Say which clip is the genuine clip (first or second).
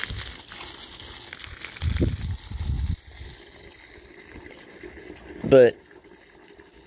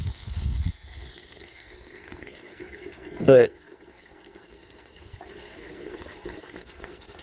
first